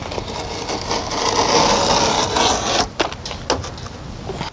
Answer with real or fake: real